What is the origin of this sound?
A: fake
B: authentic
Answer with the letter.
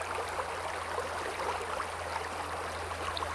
B